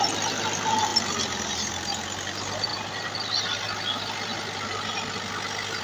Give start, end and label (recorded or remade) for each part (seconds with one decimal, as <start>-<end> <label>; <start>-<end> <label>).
0.0-5.8 recorded